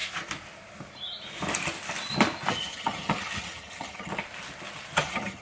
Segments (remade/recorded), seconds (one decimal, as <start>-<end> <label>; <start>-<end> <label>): 0.0-2.5 recorded; 2.5-4.1 remade; 4.1-5.0 recorded; 5.0-5.4 remade